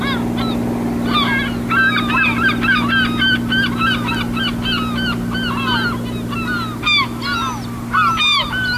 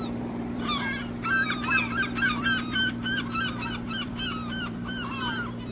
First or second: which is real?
first